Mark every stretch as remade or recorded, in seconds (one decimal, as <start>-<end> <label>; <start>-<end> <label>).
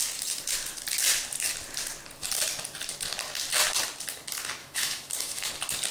0.0-4.6 recorded; 4.6-5.5 remade; 5.5-5.9 recorded